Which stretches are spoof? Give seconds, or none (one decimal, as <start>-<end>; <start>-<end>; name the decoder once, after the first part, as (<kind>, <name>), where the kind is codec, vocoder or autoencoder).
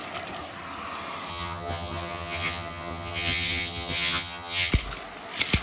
1.3-4.7 (vocoder, HiFi-GAN)